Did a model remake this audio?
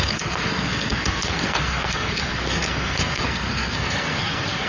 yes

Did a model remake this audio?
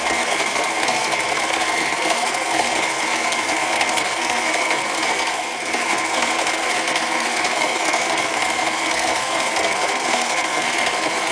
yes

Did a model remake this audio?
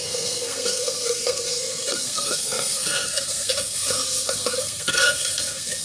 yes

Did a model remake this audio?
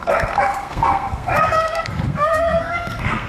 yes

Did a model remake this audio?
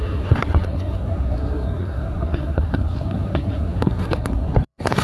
yes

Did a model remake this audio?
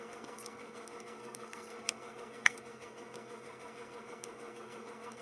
yes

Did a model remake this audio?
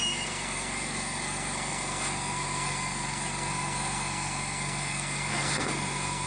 yes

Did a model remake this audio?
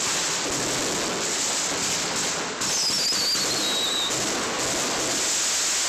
no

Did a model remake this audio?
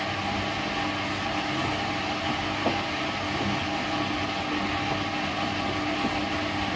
no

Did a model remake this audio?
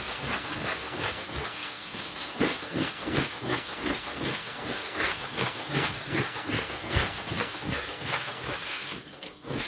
yes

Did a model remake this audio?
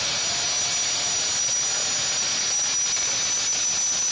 no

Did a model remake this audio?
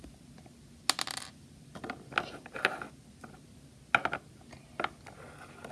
no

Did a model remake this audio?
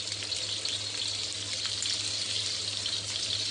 no